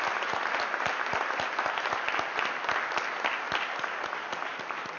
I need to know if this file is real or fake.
real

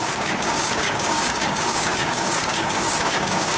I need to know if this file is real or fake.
fake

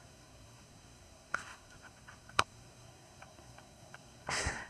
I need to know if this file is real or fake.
fake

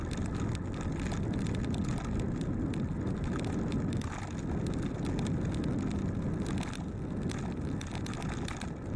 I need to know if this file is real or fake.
real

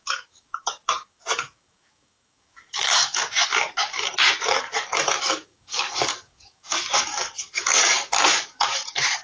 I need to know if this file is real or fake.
fake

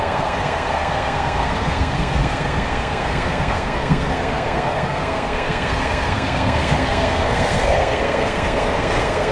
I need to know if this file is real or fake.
fake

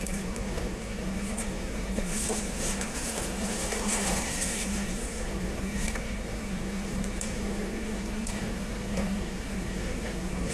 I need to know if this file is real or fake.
fake